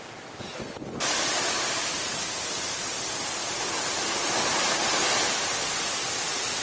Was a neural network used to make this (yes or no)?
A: no